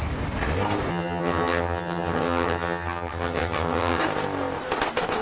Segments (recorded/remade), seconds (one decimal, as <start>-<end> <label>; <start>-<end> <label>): 0.0-0.9 recorded; 0.9-4.0 remade; 4.0-5.2 recorded